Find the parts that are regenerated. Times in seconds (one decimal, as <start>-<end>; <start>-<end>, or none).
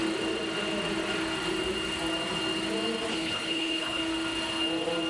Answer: 3.1-4.0